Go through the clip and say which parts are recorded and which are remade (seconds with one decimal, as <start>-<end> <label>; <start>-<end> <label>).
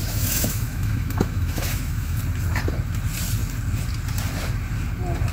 0.0-2.2 remade; 2.2-5.3 recorded